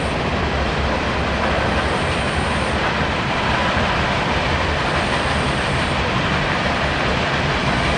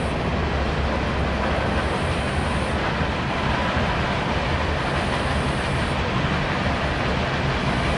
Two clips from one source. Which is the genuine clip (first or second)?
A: second